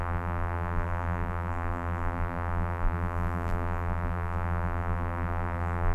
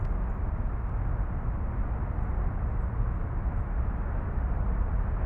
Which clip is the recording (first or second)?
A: second